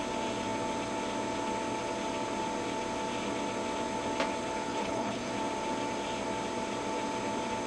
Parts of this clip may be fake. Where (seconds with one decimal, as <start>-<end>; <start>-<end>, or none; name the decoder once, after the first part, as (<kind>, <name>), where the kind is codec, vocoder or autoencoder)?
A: 4.7-5.3 (codec, HILCodec)